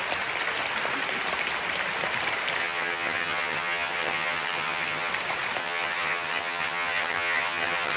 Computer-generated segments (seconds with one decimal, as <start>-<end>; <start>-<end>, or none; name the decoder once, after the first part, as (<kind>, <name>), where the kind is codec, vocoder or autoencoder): 2.6-5.1 (vocoder, HiFi-GAN); 5.6-8.0